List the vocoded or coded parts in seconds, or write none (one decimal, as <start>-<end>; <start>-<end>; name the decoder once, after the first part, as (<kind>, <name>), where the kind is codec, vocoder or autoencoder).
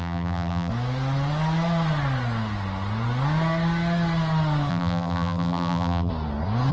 0.0-0.7 (vocoder, BigVGAN v2); 4.7-6.1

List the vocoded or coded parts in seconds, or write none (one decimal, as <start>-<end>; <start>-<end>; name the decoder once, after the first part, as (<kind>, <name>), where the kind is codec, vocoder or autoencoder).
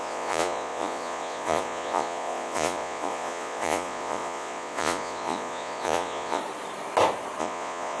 0.0-6.4 (vocoder, Vocos); 7.4-8.0